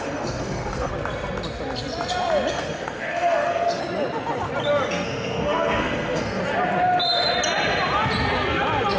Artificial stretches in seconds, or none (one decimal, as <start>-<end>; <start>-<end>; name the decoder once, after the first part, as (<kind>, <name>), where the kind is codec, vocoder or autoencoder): 0.0-0.9 (codec, SNAC); 2.5-3.8; 4.9-6.4